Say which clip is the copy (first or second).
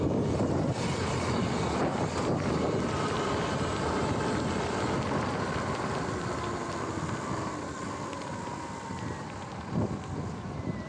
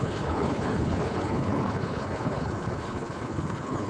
second